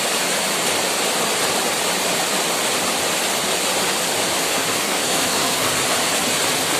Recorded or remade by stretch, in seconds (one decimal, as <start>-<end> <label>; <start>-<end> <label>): 0.0-4.4 recorded; 4.4-5.7 remade; 5.7-6.8 recorded